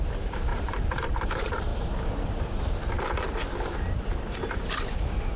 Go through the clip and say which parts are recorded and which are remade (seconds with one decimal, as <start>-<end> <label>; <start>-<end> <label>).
0.0-1.7 remade; 1.7-4.9 recorded; 4.9-5.4 remade